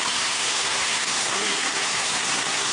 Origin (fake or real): fake